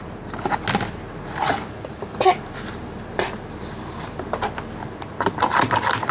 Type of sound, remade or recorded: recorded